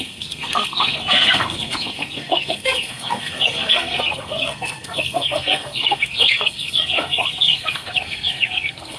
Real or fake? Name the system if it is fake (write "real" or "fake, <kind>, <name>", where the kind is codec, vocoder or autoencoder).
fake, codec, SNAC